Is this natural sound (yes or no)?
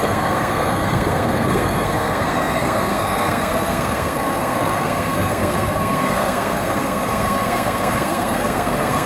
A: no